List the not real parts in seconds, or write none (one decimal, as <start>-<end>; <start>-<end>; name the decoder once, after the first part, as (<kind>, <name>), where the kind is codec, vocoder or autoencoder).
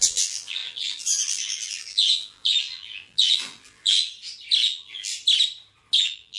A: 0.0-4.1 (vocoder, BigVGAN v2); 4.6-5.1; 6.0-6.4